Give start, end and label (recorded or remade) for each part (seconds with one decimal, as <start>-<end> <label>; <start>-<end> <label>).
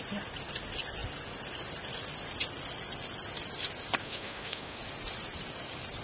0.0-4.0 recorded; 4.0-4.8 remade; 4.8-6.0 recorded